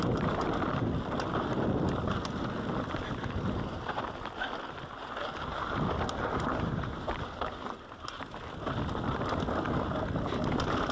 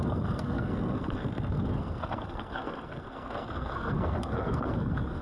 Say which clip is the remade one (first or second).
second